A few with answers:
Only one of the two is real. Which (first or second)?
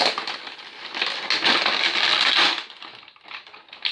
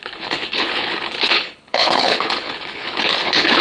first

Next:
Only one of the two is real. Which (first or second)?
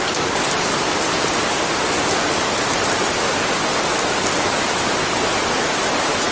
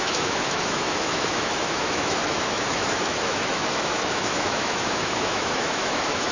first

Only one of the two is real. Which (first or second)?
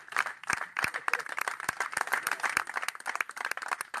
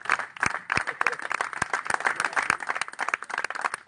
second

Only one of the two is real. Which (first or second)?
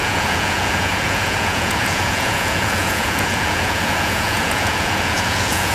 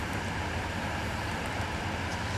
second